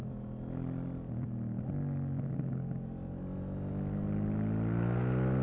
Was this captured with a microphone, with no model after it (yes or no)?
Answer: yes